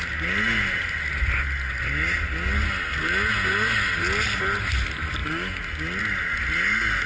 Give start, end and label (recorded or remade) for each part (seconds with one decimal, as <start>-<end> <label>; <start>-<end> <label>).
0.0-7.1 recorded